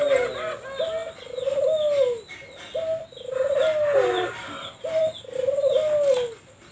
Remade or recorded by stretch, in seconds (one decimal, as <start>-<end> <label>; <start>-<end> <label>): 0.0-6.7 recorded